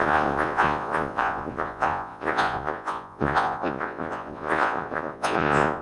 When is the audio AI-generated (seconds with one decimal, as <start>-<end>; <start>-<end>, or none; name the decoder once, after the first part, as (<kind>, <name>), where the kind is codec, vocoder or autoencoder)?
0.0-5.8 (vocoder, Vocos)